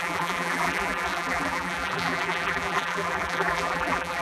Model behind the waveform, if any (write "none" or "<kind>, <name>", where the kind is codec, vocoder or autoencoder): vocoder, BigVGAN v2